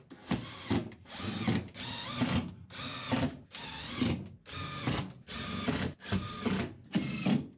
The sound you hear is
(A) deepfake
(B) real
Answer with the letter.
B